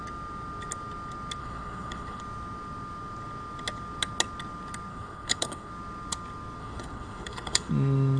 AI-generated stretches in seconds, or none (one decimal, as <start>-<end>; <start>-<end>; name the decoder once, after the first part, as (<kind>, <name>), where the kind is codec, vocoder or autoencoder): 1.4-2.2 (codec, HILCodec); 4.9-5.7; 6.6-7.7

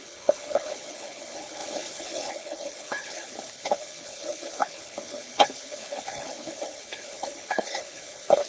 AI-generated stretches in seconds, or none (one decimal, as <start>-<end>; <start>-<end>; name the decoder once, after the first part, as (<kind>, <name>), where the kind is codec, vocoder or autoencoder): 0.0-8.5 (codec, HILCodec)

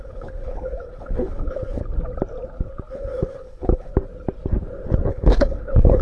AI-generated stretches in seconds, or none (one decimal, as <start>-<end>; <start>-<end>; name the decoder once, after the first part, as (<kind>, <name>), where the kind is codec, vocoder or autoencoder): 0.0-1.8 (codec, HILCodec); 2.9-3.9; 5.1-6.0

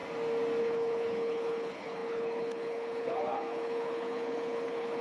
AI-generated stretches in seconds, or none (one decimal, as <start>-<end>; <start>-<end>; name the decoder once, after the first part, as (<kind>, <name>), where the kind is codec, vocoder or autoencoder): 0.6-5.0 (codec, HILCodec)

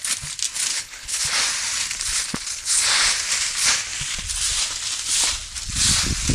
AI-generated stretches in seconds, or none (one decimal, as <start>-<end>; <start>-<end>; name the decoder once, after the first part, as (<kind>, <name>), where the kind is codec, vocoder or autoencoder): 0.7-1.2 (codec, HILCodec); 2.3-2.8

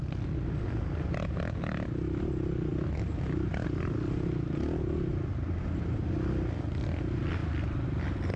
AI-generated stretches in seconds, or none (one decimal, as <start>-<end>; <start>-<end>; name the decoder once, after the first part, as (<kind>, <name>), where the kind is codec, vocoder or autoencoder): none

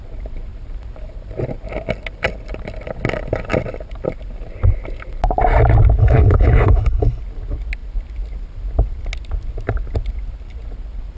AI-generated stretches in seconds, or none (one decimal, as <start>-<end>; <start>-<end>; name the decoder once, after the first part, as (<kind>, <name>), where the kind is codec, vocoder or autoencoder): 6.0-7.2 (codec, HILCodec)

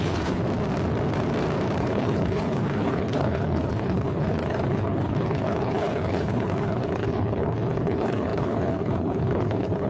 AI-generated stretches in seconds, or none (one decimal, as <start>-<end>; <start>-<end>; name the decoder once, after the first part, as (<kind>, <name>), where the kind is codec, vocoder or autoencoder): 0.0-0.4 (codec, HILCodec); 1.8-9.9